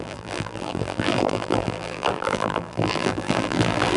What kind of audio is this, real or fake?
fake